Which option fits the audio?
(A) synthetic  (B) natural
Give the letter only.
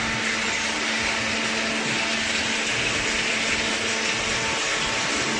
B